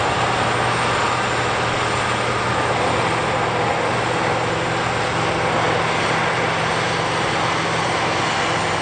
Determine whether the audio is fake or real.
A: real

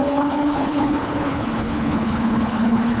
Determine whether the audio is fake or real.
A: fake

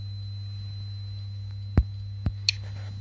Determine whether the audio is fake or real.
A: real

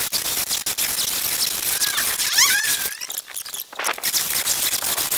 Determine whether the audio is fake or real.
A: real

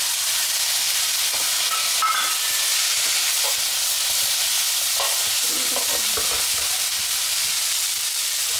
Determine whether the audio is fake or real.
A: real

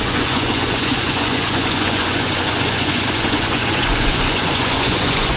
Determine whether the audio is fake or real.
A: fake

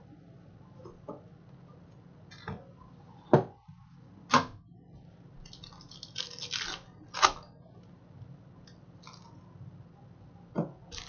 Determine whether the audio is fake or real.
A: real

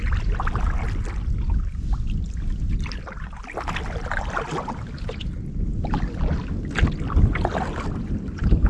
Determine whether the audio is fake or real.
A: real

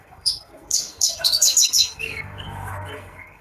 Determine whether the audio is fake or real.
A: fake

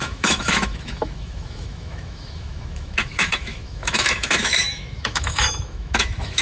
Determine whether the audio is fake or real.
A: fake